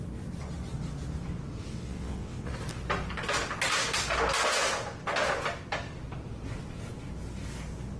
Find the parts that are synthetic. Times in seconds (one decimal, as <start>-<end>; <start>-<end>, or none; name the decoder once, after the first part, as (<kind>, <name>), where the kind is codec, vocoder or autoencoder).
1.7-2.5 (vocoder, WaveNeXt)